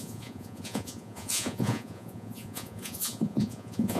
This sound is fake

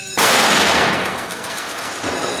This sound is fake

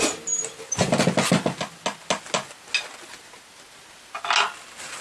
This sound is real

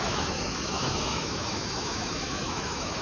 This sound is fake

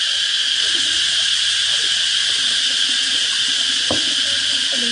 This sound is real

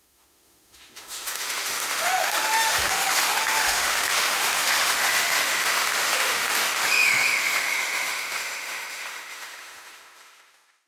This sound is fake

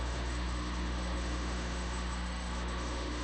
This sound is fake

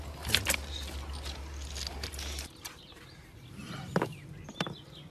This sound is real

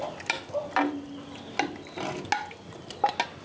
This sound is real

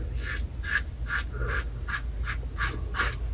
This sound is real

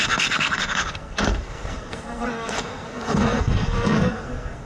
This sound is fake